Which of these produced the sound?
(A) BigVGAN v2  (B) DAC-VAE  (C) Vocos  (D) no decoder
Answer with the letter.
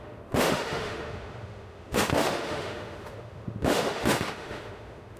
B